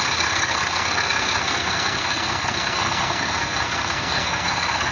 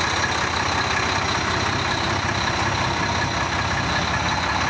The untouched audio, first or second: second